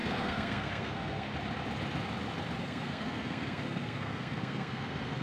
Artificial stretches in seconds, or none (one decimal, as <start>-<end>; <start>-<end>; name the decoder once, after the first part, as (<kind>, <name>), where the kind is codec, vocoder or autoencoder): 0.0-1.3 (codec, SNAC); 2.6-5.2